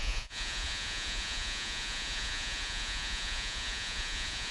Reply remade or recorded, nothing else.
remade